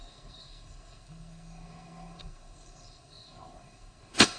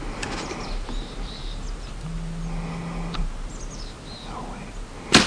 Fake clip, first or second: first